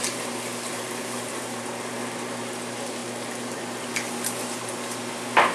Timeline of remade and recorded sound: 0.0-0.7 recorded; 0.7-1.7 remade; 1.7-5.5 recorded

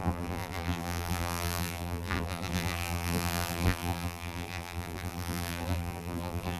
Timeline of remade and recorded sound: 0.0-6.6 remade